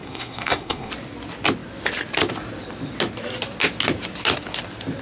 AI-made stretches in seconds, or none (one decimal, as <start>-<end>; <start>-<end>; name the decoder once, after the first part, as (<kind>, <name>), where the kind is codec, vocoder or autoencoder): 0.0-0.9 (codec, SNAC)